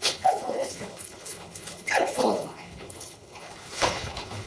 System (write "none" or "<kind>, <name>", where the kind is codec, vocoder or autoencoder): codec, HILCodec